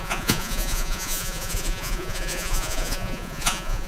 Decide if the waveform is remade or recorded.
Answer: remade